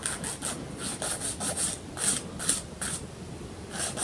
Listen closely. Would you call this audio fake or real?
real